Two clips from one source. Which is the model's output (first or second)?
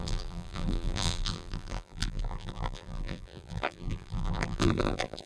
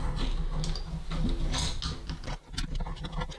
first